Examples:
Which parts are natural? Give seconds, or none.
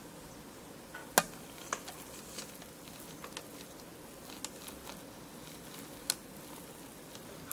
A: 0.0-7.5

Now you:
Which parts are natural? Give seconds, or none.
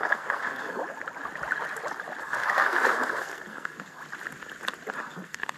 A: 0.8-2.2; 4.0-5.0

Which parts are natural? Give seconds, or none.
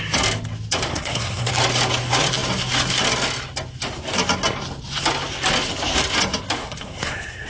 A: 0.0-0.9; 1.5-6.6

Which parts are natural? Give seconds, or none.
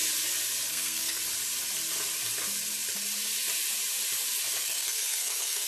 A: 0.0-0.7; 1.2-4.6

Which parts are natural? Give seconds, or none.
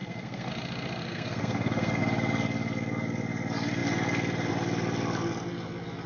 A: 0.5-1.0; 2.0-6.1